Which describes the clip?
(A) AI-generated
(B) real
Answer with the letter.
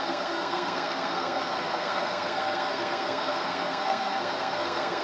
A